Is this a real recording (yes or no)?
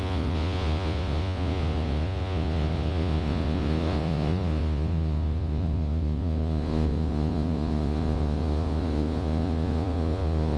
no